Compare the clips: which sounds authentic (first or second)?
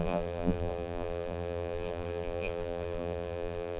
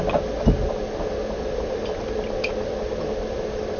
second